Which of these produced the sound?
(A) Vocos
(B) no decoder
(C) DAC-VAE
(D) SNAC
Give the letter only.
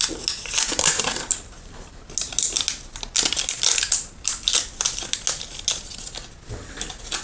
B